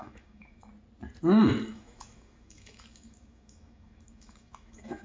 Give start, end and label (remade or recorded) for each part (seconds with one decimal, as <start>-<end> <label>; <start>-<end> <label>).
0.0-0.7 remade; 0.7-1.7 recorded; 1.7-5.0 remade